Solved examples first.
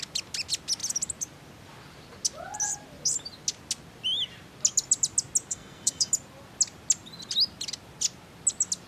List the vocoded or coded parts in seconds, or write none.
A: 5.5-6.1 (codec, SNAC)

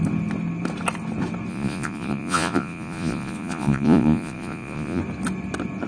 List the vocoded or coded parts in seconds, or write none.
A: 1.5-5.0 (vocoder, Vocos)